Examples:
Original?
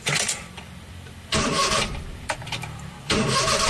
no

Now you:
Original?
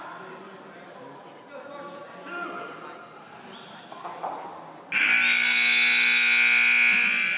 yes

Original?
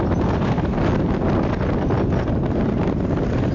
yes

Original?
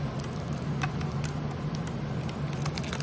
yes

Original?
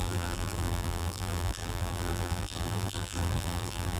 no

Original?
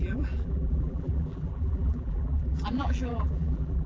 no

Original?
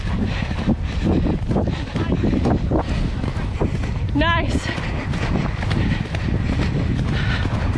yes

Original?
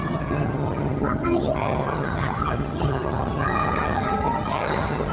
no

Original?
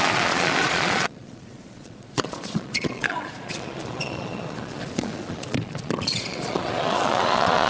no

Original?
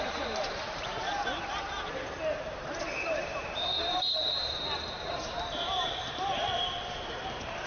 no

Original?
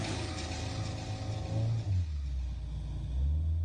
yes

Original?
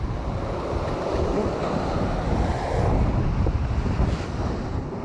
yes